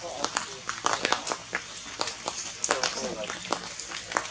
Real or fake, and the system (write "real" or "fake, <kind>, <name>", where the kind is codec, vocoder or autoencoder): real